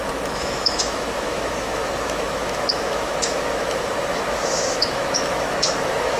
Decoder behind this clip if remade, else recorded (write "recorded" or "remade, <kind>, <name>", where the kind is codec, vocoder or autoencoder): remade, autoencoder, DAC-VAE